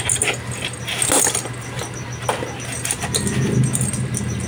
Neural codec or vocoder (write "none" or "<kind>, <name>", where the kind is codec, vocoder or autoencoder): none